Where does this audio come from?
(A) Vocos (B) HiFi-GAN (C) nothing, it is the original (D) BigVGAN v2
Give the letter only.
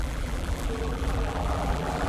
D